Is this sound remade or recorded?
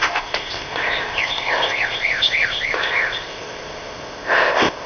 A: remade